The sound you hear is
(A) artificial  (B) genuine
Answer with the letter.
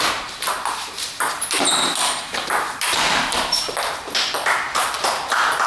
A